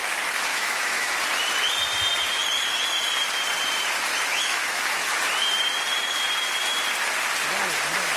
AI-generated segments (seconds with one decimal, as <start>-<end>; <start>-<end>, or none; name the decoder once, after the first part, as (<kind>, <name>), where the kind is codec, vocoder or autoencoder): 0.5-1.1 (autoencoder, DAC-VAE); 4.1-4.8